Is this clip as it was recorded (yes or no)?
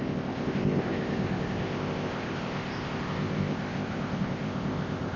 no